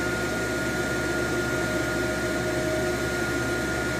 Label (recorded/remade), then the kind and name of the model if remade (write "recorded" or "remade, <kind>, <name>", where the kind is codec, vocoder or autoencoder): recorded